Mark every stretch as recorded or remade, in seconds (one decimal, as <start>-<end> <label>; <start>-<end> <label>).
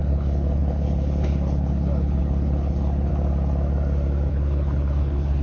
0.0-3.1 remade; 3.1-4.3 recorded; 4.3-5.4 remade